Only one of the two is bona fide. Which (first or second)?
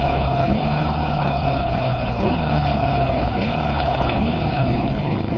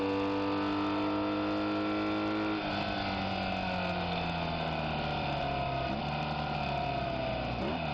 second